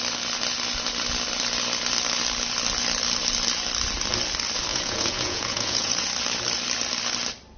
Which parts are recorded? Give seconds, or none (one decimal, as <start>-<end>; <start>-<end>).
0.0-4.7; 6.1-7.6